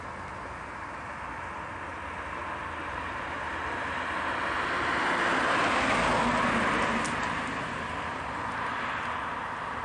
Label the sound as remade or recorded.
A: recorded